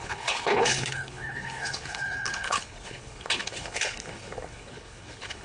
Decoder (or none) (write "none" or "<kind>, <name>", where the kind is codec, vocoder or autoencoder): codec, HILCodec